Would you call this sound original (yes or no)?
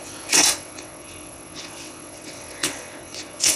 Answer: no